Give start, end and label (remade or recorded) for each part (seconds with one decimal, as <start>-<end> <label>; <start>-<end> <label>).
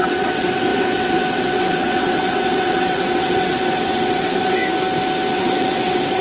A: 0.0-4.6 remade; 4.6-5.3 recorded; 5.3-6.2 remade